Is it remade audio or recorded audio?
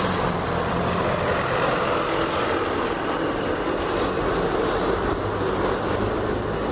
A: recorded